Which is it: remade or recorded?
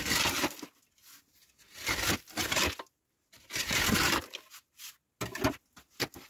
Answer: recorded